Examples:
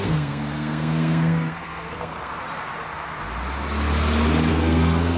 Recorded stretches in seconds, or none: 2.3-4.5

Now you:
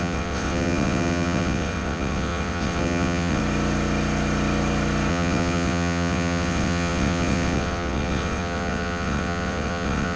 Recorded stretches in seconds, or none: 3.4-5.1

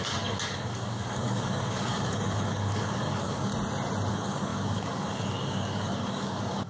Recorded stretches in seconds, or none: 3.5-4.1